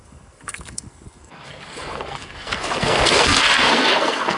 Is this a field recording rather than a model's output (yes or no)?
no